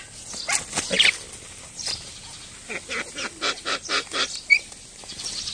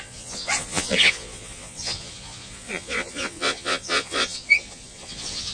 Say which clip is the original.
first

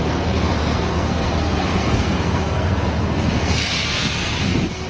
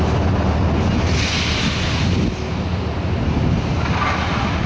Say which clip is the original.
second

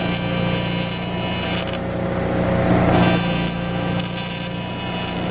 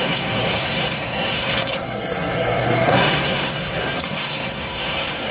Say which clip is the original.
first